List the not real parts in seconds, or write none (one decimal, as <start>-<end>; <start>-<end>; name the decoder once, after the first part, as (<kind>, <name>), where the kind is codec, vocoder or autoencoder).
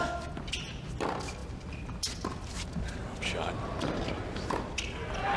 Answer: none